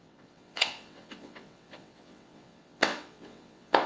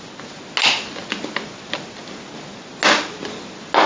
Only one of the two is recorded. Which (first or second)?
second